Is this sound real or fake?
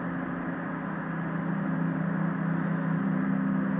real